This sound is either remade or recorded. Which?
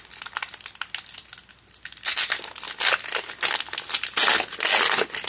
recorded